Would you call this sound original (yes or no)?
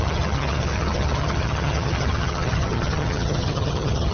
no